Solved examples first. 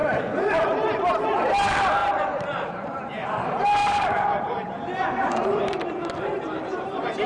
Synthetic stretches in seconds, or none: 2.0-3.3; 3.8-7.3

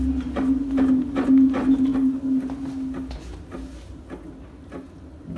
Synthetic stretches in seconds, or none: none

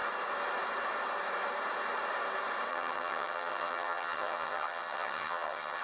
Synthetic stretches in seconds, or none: 2.7-5.8

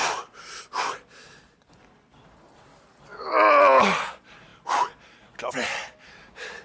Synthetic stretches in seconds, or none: none

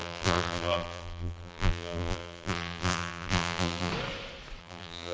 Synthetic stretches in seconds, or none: 0.0-3.9; 4.6-5.1